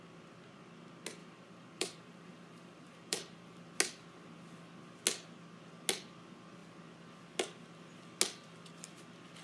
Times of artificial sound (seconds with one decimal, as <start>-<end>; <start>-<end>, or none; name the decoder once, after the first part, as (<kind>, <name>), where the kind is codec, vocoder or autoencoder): 1.2-3.6 (vocoder, BigVGAN v2)